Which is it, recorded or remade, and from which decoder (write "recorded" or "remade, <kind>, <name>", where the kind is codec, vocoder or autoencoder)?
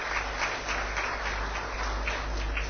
recorded